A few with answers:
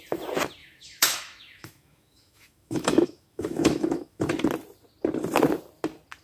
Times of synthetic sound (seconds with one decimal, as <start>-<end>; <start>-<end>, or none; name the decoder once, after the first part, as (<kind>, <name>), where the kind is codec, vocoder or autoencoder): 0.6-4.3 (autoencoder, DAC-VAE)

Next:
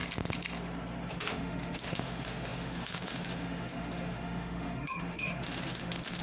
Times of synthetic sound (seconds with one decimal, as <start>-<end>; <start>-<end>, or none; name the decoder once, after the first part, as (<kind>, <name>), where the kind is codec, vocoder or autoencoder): 1.1-6.2 (autoencoder, DAC-VAE)

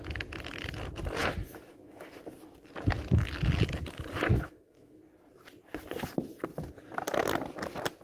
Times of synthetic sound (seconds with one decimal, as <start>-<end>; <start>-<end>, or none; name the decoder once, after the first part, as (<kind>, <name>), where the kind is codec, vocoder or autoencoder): 1.2-2.2 (autoencoder, DAC-VAE); 4.3-5.0